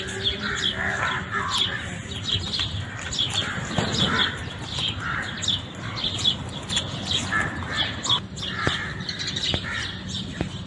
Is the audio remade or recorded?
recorded